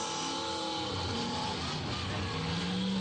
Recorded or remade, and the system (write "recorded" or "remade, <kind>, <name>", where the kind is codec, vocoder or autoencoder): recorded